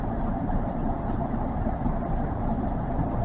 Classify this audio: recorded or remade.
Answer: recorded